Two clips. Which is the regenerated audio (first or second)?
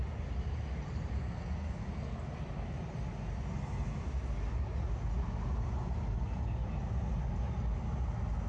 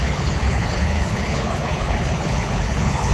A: second